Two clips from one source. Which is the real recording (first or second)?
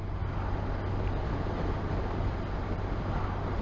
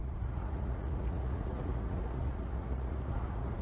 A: first